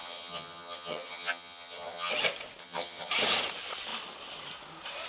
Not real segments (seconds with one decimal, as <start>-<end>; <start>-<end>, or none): 0.0-2.1; 2.6-3.1